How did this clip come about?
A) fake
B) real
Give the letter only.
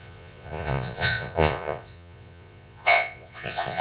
A